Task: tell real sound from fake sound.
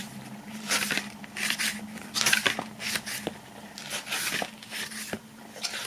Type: real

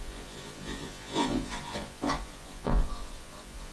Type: fake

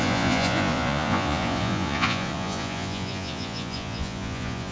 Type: fake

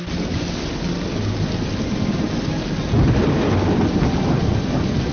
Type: real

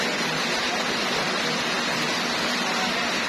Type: real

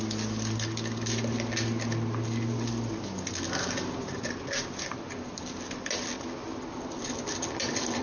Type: real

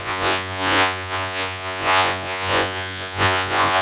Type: fake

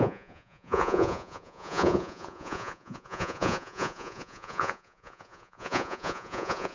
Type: fake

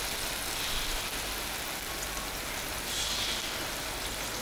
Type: real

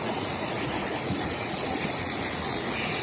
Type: fake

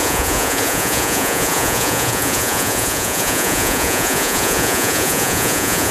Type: fake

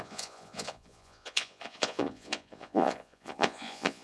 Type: fake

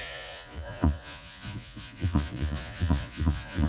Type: fake